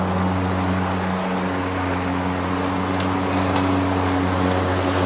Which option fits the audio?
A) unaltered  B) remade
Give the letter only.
A